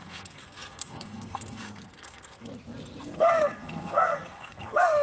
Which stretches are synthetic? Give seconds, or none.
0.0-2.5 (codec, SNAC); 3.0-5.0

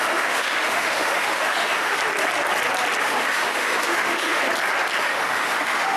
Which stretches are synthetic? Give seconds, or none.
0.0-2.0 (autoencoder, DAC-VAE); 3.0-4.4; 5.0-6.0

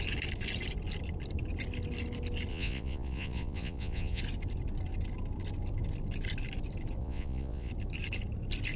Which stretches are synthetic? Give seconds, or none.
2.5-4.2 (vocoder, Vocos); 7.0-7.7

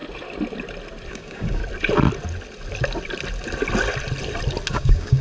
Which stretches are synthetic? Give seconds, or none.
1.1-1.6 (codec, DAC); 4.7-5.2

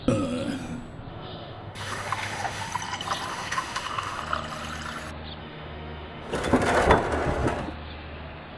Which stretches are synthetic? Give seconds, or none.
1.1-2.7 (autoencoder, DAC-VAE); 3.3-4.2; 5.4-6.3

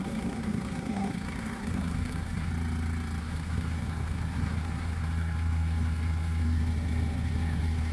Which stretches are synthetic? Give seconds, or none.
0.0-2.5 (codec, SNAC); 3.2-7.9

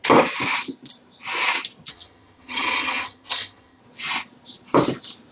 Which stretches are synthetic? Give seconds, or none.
1.9-3.8 (vocoder, HiFi-GAN)

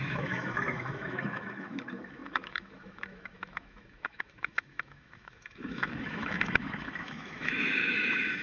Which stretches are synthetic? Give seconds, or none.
0.0-8.4 (autoencoder, DAC-VAE)